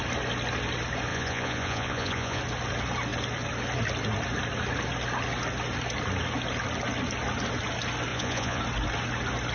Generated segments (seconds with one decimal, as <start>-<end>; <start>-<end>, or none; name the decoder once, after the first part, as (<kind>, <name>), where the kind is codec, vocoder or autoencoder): 1.1-2.4 (vocoder, Vocos); 8.1-8.6